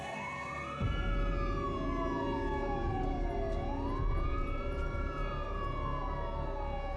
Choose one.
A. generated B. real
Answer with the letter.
B